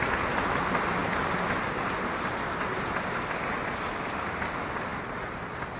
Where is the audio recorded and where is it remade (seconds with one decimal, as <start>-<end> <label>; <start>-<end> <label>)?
0.0-5.8 recorded